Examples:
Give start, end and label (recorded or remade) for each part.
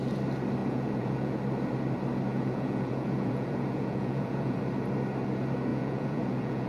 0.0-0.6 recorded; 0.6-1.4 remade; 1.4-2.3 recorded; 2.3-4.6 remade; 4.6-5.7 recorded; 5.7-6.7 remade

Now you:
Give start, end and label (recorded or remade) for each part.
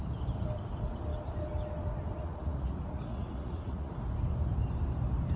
0.0-2.2 recorded; 2.2-3.9 remade; 3.9-5.4 recorded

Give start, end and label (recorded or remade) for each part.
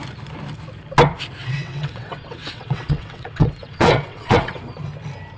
0.0-1.4 recorded; 1.4-4.6 remade; 4.6-5.4 recorded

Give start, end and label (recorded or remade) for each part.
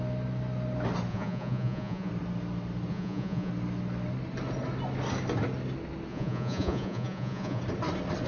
0.0-1.1 recorded; 1.1-2.1 remade; 2.1-2.9 recorded; 2.9-3.5 remade; 3.5-6.1 recorded; 6.1-7.6 remade; 7.6-8.3 recorded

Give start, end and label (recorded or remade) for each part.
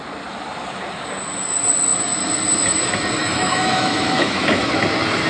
0.0-3.2 recorded; 3.2-4.7 remade; 4.7-5.3 recorded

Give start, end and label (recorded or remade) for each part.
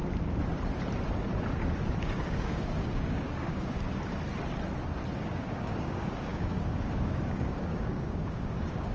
0.0-2.0 recorded; 2.0-3.9 remade; 3.9-5.2 recorded; 5.2-8.9 remade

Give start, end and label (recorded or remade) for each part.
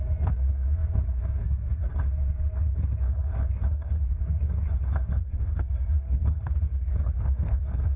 0.0-1.9 remade; 1.9-5.2 recorded; 5.2-8.0 remade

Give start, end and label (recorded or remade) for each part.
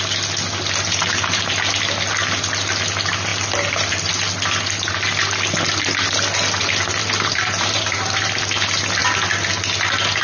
0.0-7.0 recorded; 7.0-8.4 remade; 8.4-10.2 recorded